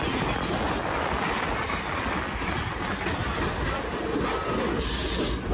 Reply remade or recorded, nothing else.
recorded